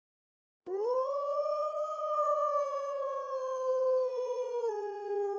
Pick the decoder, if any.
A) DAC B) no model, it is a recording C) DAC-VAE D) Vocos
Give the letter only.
D